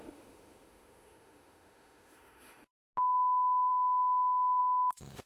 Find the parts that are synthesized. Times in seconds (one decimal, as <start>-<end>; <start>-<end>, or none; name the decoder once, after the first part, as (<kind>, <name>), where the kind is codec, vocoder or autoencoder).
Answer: 0.0-2.7 (autoencoder, DAC-VAE); 3.7-5.3